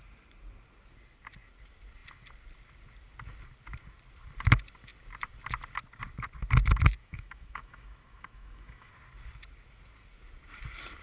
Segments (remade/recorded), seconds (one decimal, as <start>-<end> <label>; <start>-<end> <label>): 0.0-7.0 recorded; 7.0-8.9 remade; 8.9-11.0 recorded